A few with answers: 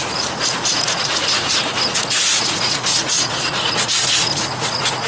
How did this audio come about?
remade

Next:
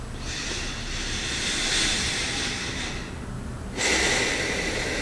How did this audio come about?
recorded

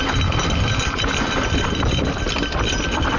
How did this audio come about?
recorded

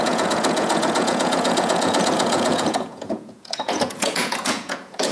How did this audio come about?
remade